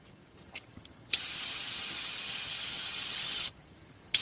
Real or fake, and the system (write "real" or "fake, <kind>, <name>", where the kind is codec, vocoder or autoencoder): fake, vocoder, HiFi-GAN